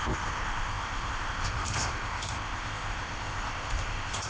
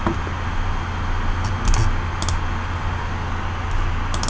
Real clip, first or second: second